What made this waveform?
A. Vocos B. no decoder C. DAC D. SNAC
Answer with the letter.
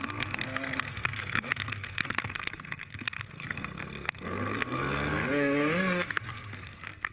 D